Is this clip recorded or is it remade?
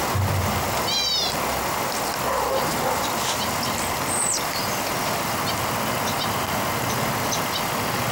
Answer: recorded